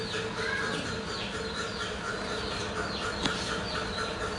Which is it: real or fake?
real